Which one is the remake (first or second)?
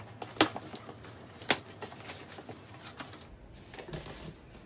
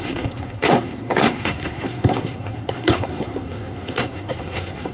second